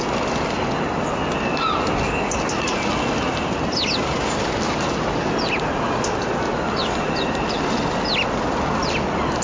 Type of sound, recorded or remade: recorded